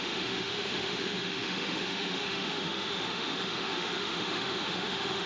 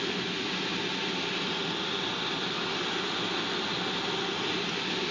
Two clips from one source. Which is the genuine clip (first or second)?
second